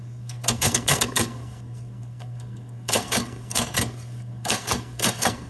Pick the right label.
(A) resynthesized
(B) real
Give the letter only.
A